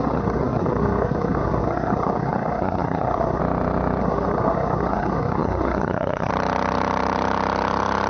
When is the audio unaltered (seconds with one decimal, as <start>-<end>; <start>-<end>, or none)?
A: 3.4-4.0; 6.3-8.1